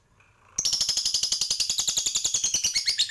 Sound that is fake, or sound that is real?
real